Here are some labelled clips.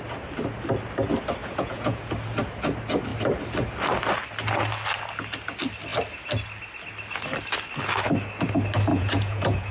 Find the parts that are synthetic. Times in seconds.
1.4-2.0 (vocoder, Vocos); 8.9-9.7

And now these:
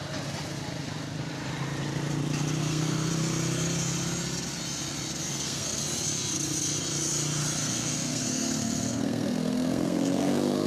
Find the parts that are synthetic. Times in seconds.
2.6-3.1 (codec, SNAC); 5.3-5.8; 7.6-10.7

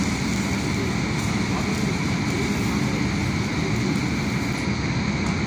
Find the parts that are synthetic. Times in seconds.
none